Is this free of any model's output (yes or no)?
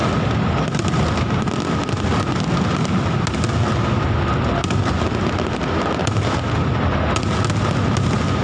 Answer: yes